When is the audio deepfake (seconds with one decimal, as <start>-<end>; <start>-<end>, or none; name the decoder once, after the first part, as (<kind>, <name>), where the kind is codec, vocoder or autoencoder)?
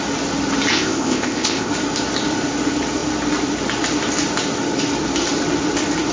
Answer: 0.7-1.7 (codec, ZipCodec)